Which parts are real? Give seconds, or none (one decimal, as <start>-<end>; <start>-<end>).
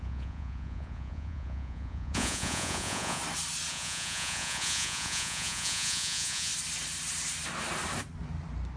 3.2-3.7; 6.5-8.8